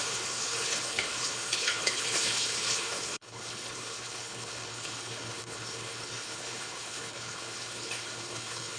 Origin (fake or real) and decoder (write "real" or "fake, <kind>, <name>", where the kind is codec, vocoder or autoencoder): fake, codec, HILCodec